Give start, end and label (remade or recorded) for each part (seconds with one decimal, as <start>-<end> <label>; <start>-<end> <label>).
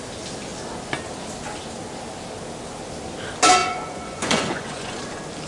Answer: 0.0-3.6 recorded; 3.6-5.0 remade; 5.0-5.5 recorded